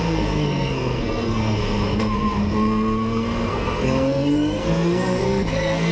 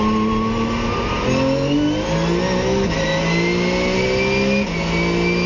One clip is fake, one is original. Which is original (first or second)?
second